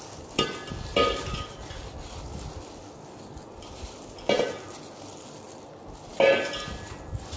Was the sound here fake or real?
real